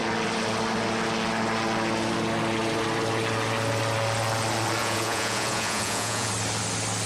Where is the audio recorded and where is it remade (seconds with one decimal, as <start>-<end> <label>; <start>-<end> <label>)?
0.0-4.8 recorded; 4.8-6.3 remade; 6.3-7.1 recorded